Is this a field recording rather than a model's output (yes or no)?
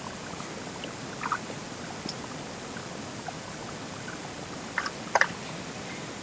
yes